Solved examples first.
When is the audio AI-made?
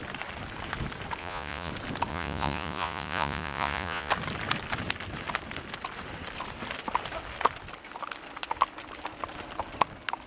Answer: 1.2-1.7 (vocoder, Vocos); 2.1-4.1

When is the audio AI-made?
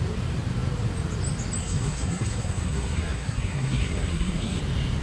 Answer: 1.6-4.6 (codec, SNAC)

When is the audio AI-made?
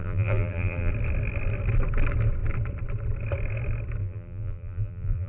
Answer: 0.0-0.9 (vocoder, BigVGAN v2); 4.0-5.3